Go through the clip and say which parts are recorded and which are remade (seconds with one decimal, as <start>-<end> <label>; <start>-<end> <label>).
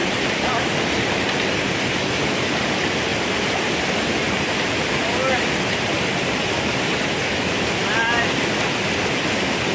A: 0.0-7.8 recorded; 7.8-9.7 remade